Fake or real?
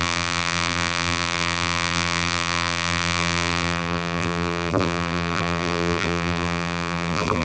fake